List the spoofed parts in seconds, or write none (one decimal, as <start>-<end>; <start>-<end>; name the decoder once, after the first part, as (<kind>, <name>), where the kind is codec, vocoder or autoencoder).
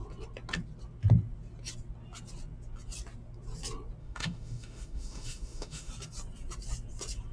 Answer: 4.0-5.9 (autoencoder, DAC-VAE)